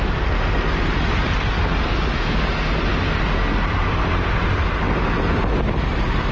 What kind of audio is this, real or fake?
real